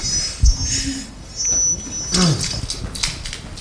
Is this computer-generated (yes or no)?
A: no